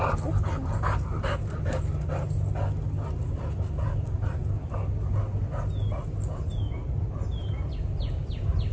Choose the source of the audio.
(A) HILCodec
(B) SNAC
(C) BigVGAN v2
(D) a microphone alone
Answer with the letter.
D